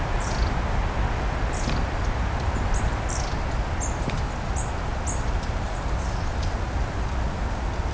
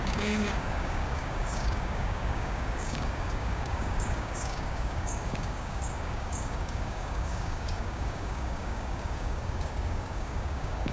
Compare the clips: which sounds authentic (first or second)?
first